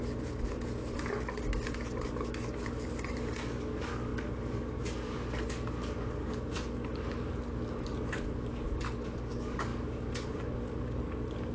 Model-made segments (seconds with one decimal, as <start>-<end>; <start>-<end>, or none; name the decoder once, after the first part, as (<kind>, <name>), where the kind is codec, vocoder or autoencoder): 0.0-11.5 (codec, DAC)